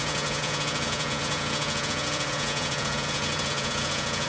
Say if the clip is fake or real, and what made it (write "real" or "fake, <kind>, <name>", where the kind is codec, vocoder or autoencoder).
fake, vocoder, Vocos